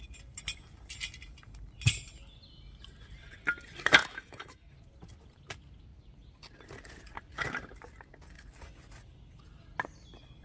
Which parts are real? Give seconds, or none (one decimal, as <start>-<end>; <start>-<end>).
0.0-4.0; 4.7-10.4